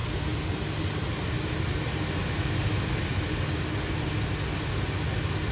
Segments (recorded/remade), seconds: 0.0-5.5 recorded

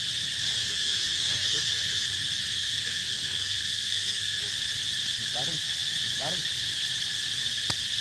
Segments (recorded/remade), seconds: 0.0-0.6 recorded; 0.6-2.1 remade; 2.1-2.5 recorded; 2.5-4.4 remade; 4.4-8.0 recorded

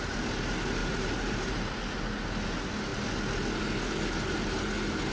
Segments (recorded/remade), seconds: 0.0-0.8 recorded; 0.8-1.7 remade; 1.7-5.1 recorded

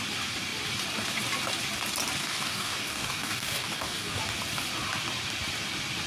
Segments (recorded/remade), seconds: 0.0-2.2 recorded; 2.2-4.2 remade; 4.2-6.1 recorded

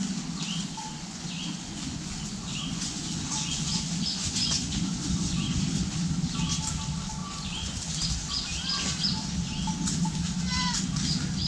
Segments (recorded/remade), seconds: 0.0-0.8 recorded; 0.8-5.6 remade; 5.6-7.2 recorded; 7.2-7.8 remade; 7.8-11.5 recorded

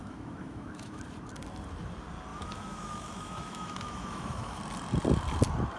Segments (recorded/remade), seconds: 0.0-1.0 remade; 1.0-2.3 recorded; 2.3-4.6 remade; 4.6-5.8 recorded

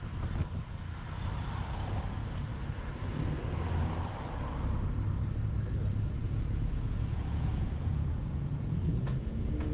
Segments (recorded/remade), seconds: 0.0-6.2 recorded; 6.2-9.7 remade